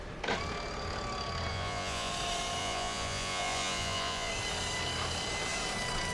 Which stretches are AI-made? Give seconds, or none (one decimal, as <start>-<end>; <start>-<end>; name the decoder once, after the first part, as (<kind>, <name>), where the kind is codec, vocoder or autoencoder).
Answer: 1.5-2.1 (vocoder, Vocos); 2.6-4.3